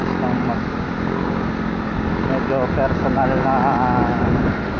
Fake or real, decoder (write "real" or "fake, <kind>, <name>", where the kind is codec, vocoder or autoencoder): real